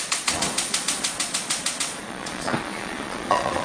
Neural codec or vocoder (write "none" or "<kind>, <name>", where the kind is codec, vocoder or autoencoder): vocoder, Vocos